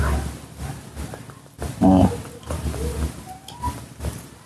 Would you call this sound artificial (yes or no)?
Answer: no